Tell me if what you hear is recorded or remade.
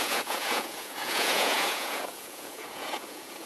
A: remade